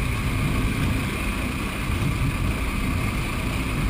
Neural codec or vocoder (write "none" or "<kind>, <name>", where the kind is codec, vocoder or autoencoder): none